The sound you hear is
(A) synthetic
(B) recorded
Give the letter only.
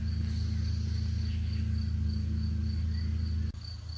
B